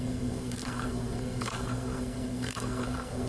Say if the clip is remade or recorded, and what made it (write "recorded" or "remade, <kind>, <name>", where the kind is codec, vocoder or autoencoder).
remade, codec, SNAC